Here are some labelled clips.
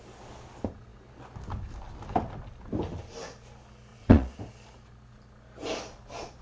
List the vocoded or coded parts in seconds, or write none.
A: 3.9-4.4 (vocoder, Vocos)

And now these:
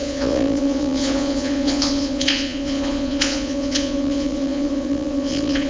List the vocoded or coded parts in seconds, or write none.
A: 0.0-5.7 (vocoder, Vocos)

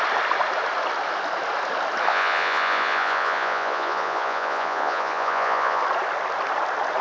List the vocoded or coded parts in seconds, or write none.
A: 2.1-5.8 (vocoder, Vocos)